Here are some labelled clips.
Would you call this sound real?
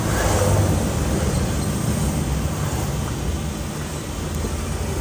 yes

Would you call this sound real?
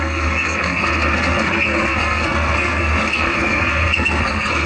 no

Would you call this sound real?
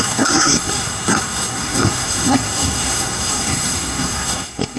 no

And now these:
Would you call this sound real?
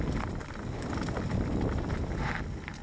yes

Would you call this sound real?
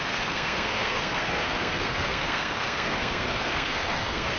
no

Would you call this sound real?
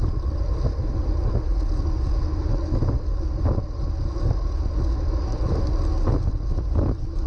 yes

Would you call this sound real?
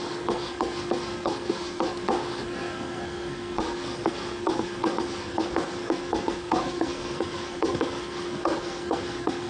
no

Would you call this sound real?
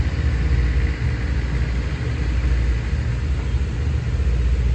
yes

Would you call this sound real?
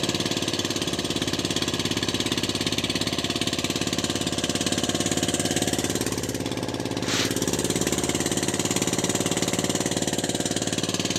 yes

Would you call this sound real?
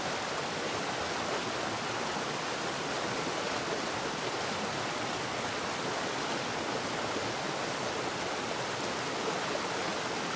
yes